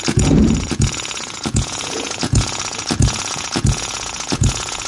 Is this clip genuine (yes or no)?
no